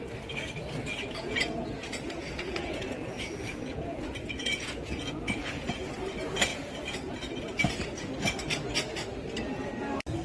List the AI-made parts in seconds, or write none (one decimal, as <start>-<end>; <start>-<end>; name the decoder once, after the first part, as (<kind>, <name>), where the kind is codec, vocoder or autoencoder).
1.0-5.9 (vocoder, Vocos); 6.5-7.1